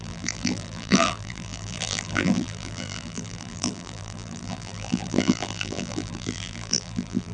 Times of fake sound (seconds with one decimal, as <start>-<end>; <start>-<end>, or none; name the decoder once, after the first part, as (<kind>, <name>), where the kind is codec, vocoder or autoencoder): 0.0-7.3 (vocoder, BigVGAN v2)